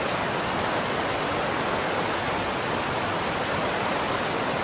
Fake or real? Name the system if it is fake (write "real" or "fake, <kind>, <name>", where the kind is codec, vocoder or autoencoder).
real